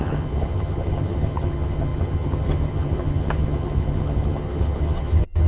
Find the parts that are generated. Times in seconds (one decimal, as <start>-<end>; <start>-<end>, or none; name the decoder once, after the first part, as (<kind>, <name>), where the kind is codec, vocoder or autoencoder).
0.0-5.5 (vocoder, HiFi-GAN)